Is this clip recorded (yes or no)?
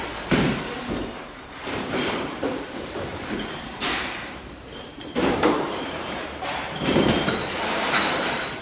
no